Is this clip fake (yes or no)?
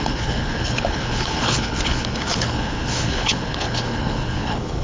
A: yes